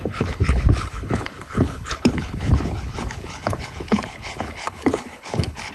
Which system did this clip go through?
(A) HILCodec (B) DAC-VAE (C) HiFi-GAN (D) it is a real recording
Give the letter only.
A